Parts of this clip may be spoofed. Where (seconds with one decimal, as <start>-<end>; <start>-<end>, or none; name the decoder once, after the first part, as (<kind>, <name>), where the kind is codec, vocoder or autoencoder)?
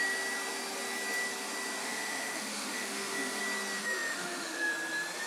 1.8-3.4 (autoencoder, DAC-VAE); 3.8-4.7